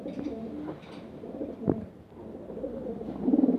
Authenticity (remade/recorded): remade